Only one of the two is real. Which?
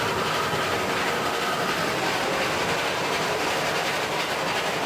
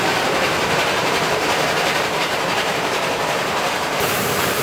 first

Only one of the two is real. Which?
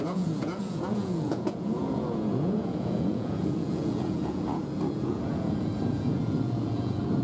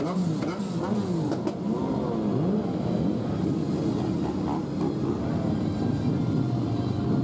second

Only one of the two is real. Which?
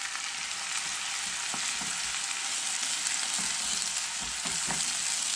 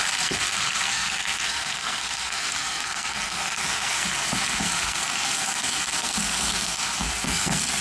first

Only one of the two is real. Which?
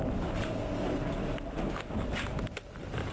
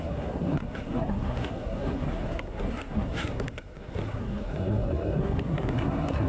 first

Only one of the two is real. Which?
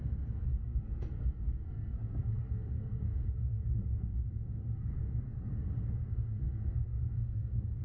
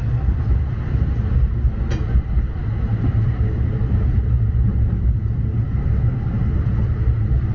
second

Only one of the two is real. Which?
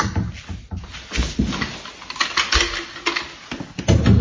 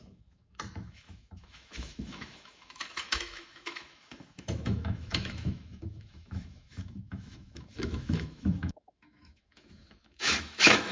first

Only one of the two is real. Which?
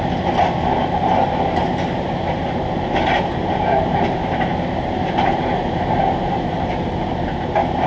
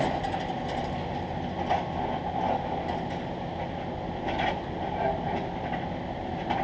second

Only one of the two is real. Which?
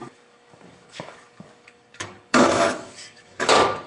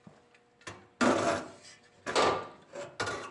second